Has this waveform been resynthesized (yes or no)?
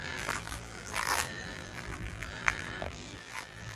yes